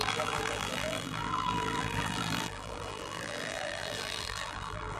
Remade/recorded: remade